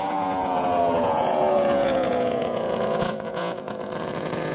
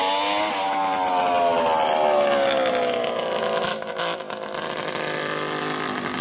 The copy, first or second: first